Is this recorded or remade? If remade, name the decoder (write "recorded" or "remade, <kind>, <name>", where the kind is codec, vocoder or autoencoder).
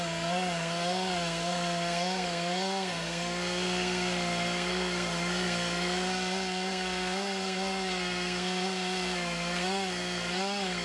remade, codec, SNAC